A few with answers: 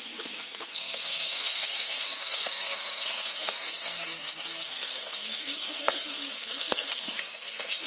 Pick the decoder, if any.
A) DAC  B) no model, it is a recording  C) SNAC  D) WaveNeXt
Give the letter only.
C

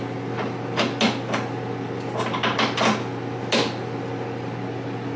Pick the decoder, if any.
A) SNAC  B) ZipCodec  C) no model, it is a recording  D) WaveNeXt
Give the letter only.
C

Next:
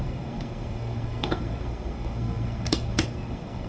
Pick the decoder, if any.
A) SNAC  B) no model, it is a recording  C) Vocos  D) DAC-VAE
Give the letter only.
A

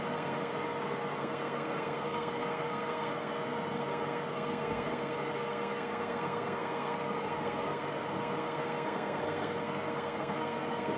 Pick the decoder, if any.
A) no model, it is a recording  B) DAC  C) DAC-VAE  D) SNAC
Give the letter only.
D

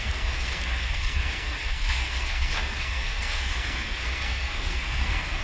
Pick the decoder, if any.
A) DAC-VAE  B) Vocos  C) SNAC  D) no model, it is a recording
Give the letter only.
C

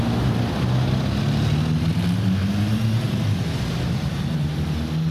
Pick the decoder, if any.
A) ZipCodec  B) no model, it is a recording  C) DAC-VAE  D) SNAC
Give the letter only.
B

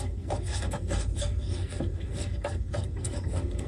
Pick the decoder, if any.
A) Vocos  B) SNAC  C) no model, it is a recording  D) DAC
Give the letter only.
B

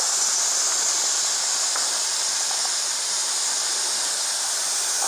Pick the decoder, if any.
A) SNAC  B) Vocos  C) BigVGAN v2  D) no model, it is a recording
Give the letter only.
D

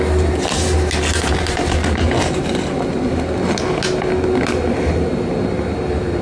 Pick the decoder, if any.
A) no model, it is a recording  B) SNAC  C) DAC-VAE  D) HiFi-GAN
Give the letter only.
A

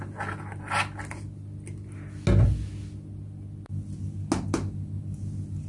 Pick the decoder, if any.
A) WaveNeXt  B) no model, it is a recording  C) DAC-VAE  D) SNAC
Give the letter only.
B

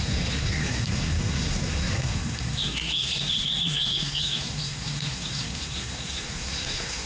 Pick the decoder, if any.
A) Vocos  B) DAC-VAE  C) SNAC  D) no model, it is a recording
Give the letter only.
C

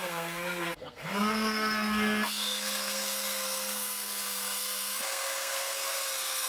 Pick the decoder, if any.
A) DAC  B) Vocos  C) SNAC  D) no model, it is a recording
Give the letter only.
C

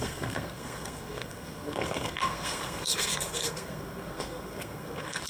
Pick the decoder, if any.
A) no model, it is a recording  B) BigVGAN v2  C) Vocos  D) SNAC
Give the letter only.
D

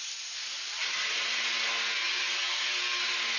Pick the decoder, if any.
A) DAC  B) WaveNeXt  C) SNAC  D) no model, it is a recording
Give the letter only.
D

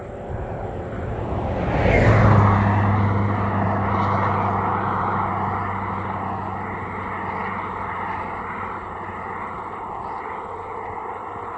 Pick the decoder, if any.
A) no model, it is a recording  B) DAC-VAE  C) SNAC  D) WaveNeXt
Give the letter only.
A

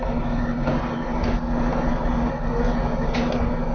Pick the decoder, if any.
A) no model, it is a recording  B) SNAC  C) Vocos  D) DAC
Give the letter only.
A